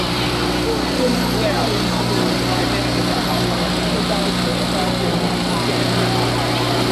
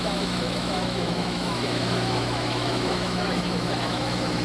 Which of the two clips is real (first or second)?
first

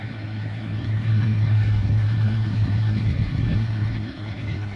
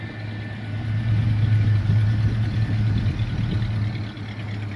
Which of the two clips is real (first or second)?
second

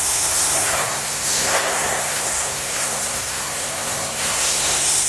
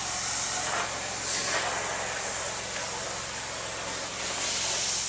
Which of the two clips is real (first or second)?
second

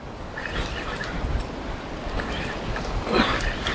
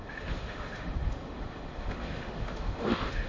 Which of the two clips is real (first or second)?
first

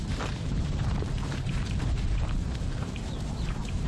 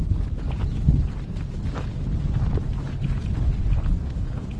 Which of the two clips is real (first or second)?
second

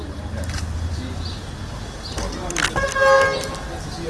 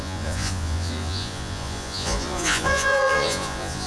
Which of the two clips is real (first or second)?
first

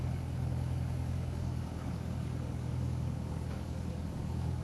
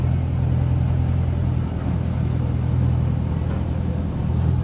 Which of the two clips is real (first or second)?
second